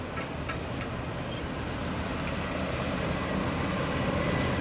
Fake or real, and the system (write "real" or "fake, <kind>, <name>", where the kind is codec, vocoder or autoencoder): real